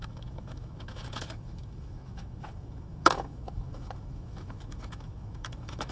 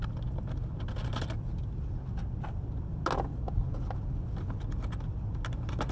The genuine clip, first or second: second